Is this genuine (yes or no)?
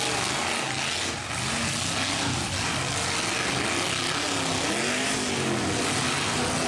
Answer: yes